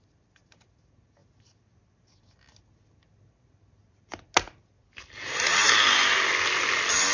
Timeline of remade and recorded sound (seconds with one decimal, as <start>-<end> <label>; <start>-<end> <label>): 0.0-7.1 recorded